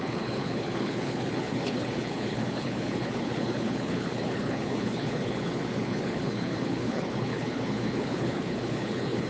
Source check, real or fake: fake